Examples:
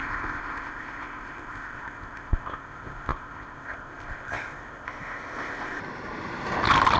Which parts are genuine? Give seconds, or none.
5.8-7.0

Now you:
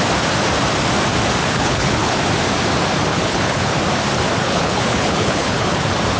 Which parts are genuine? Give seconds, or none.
0.0-1.4; 2.2-3.1; 3.8-4.4; 5.8-6.2

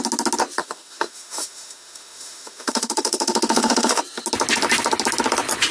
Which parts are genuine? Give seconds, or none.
0.0-0.6; 4.0-5.7

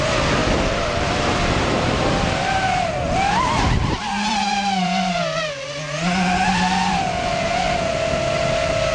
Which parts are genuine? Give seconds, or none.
0.0-0.4; 5.5-6.5; 7.0-8.9

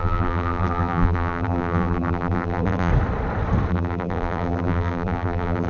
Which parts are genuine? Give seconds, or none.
2.9-3.7

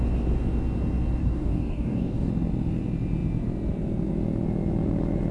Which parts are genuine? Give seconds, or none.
0.0-1.2; 2.3-5.3